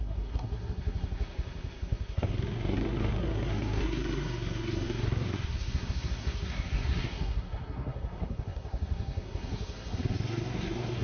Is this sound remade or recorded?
remade